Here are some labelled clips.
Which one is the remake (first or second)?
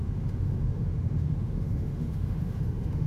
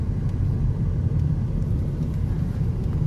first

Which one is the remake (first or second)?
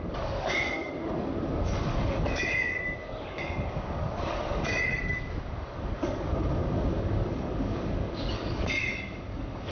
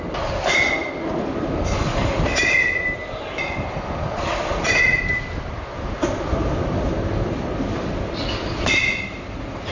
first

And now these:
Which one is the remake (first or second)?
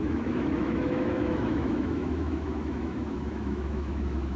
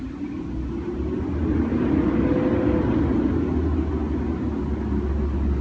first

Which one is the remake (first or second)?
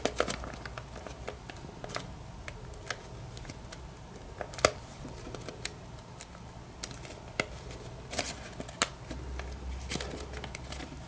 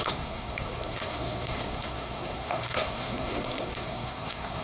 second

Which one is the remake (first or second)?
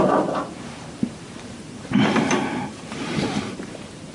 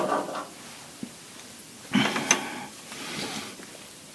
first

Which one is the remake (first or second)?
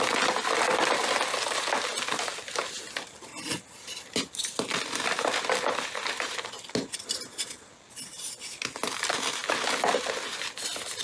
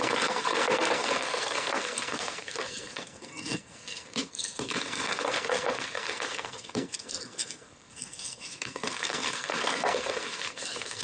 second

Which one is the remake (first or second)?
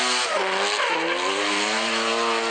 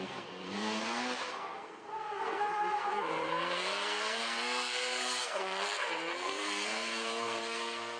second